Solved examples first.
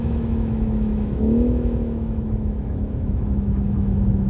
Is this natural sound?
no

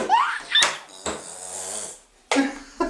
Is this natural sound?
yes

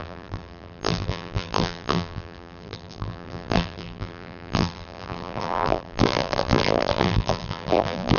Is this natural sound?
no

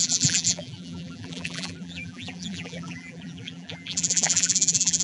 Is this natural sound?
no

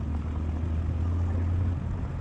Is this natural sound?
yes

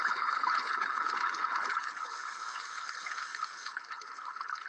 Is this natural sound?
no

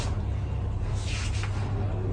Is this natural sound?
yes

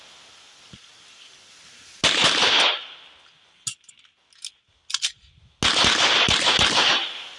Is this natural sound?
yes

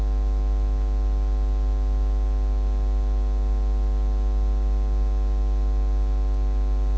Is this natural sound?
yes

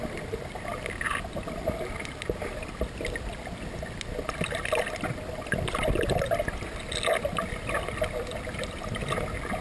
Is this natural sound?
yes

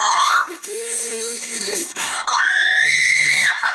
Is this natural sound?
no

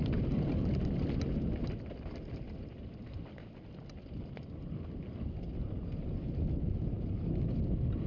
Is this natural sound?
yes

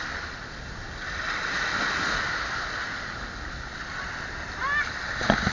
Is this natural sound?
yes